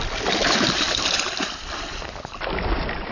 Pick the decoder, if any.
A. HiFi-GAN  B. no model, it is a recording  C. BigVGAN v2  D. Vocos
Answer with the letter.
B